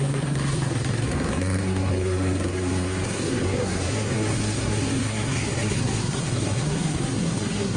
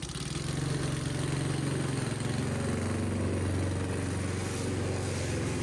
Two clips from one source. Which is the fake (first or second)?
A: first